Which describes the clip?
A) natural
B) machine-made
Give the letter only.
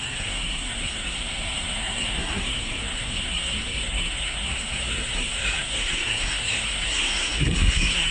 B